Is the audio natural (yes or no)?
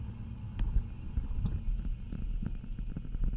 yes